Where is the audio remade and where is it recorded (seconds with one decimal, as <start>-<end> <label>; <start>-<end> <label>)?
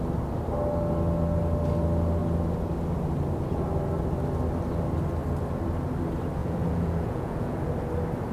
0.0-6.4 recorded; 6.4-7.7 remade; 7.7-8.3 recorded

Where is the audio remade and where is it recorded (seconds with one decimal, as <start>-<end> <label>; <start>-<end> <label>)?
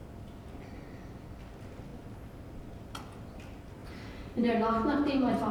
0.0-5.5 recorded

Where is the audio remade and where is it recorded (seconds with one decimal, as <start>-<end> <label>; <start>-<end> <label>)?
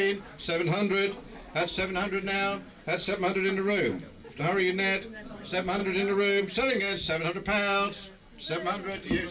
0.0-9.3 recorded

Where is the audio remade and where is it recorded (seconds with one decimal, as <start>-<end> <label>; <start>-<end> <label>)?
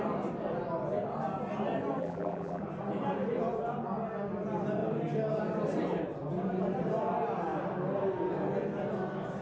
0.0-2.0 recorded; 2.0-2.6 remade; 2.6-9.4 recorded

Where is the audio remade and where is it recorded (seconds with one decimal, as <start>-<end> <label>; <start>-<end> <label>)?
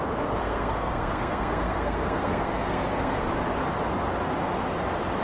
0.0-0.4 recorded; 0.4-3.2 remade; 3.2-5.2 recorded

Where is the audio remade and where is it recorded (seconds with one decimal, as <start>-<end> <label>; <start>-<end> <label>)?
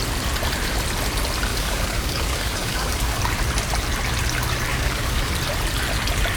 0.0-1.5 recorded; 1.5-3.2 remade; 3.2-4.7 recorded; 4.7-5.3 remade; 5.3-6.4 recorded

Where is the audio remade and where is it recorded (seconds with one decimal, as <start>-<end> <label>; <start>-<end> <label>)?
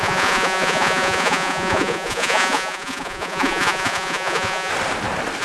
0.0-4.7 remade; 4.7-5.4 recorded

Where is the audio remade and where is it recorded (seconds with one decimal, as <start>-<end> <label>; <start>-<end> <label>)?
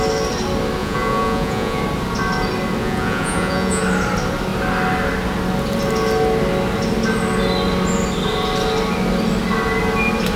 0.0-0.8 recorded; 0.8-1.8 remade; 1.8-2.8 recorded; 2.8-3.8 remade; 3.8-10.4 recorded